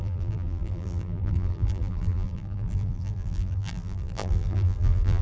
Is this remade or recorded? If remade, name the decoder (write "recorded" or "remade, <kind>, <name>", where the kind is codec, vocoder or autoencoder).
remade, vocoder, BigVGAN v2